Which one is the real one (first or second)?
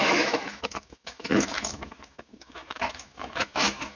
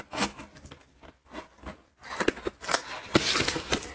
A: second